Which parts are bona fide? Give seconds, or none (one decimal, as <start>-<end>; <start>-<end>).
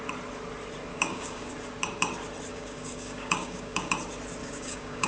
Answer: 0.0-0.9; 1.5-2.5; 3.9-4.4